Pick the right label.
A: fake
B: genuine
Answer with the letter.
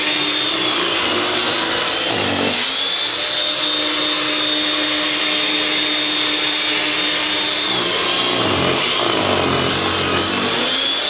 B